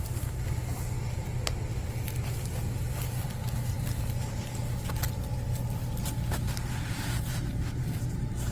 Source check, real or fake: real